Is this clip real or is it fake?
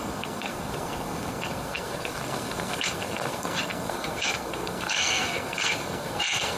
fake